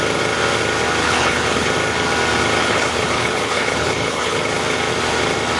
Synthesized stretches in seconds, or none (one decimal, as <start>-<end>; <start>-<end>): 1.0-1.7; 2.6-4.4